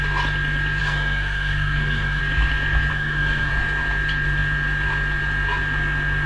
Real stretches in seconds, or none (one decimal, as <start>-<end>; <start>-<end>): 0.0-0.8; 2.2-2.9; 3.5-6.3

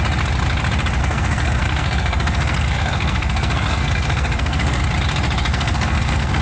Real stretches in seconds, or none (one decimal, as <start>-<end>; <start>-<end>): 0.0-1.0; 4.8-5.5